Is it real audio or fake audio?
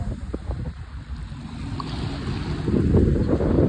real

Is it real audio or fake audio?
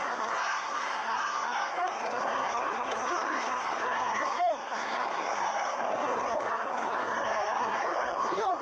fake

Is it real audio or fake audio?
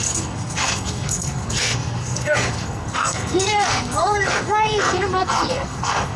fake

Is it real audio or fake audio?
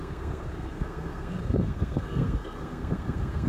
fake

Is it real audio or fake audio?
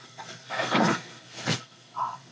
fake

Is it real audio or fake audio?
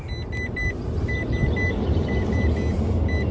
real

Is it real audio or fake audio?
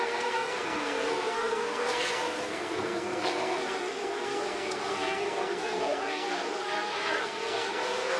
fake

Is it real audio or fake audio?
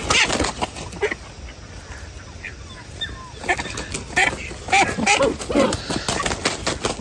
real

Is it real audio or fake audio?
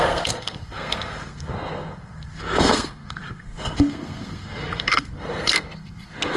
fake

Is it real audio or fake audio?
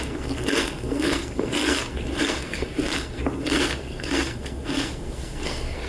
fake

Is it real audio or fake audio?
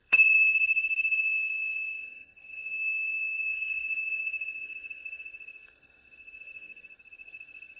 fake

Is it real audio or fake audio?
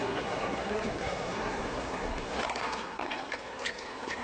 fake